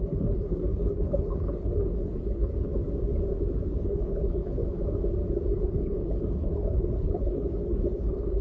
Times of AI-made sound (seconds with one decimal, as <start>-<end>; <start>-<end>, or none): 0.0-2.7; 3.8-4.6; 5.5-8.4